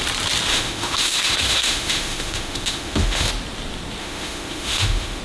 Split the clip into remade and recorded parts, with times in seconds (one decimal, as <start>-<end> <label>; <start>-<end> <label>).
0.0-0.5 recorded; 0.5-3.3 remade; 3.3-4.0 recorded; 4.0-5.2 remade